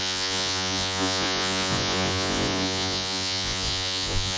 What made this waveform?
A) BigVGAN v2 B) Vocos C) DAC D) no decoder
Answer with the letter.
B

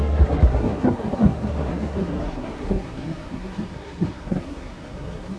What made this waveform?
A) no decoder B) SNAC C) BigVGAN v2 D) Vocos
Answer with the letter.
B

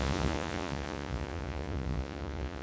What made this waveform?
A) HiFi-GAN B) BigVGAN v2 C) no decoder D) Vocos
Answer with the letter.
D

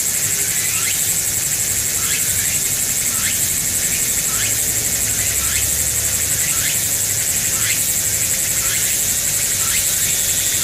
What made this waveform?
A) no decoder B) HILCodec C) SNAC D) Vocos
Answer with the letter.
A